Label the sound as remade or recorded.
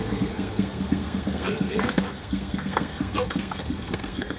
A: remade